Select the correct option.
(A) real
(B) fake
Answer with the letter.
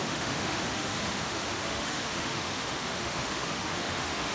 B